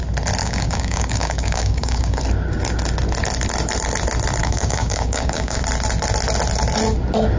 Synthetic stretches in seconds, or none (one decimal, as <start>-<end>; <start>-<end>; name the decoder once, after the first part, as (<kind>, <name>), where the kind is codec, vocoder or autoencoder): 0.4-2.2 (codec, DAC); 4.4-5.6